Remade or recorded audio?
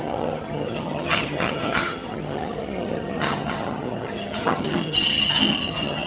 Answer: remade